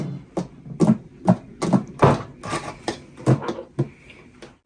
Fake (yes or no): no